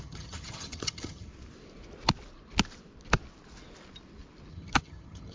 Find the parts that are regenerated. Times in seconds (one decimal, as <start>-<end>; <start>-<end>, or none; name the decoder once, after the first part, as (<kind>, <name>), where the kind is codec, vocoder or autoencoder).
0.0-1.3 (vocoder, HiFi-GAN); 4.5-5.3